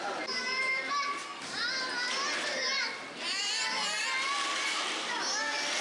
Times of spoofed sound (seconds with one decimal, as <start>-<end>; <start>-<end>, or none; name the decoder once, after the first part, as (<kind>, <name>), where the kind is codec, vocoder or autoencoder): none